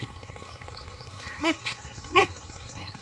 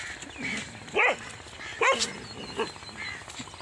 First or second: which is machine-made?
first